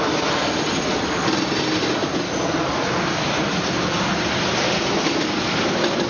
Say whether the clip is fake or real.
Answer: real